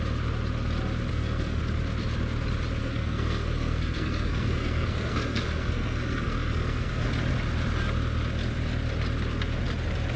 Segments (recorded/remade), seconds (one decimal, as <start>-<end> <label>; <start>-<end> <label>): 0.0-1.1 recorded; 1.1-1.6 remade; 1.6-2.8 recorded; 2.8-7.1 remade; 7.1-10.2 recorded